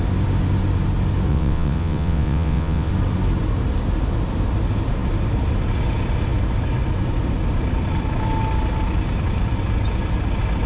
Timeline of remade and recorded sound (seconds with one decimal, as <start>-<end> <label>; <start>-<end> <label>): 0.0-1.3 recorded; 1.3-2.9 remade; 2.9-10.7 recorded